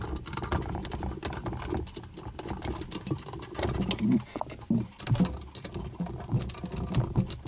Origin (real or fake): real